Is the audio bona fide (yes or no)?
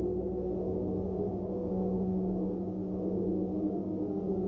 no